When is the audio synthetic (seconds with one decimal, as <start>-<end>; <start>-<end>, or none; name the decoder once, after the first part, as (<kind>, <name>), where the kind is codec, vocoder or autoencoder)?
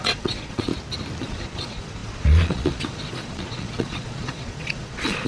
0.0-0.7 (vocoder, Vocos); 1.2-5.3